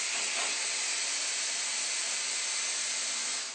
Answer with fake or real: real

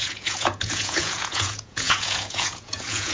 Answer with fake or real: fake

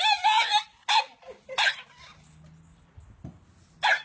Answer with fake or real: real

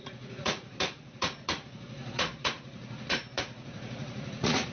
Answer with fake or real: fake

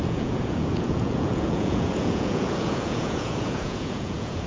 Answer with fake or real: fake